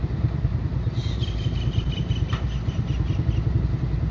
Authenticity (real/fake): real